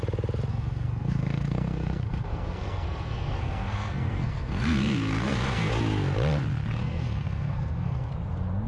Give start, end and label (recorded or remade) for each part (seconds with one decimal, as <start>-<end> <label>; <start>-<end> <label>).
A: 0.0-0.5 recorded; 0.5-5.7 remade; 5.7-6.8 recorded; 6.8-8.1 remade; 8.1-8.7 recorded